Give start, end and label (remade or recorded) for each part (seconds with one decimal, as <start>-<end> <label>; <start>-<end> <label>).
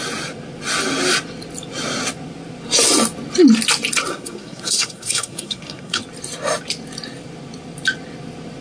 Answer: 0.0-4.1 recorded; 4.1-6.0 remade; 6.0-8.6 recorded